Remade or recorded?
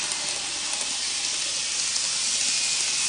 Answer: recorded